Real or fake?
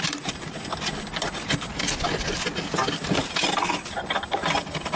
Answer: real